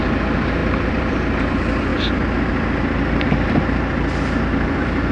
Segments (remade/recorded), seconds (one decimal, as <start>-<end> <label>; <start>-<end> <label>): 0.0-0.6 recorded; 0.6-1.4 remade; 1.4-5.1 recorded